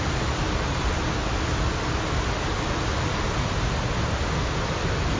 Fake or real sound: real